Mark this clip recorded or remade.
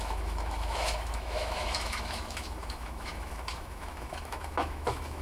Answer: remade